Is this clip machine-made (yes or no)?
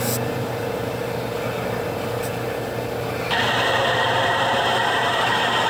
no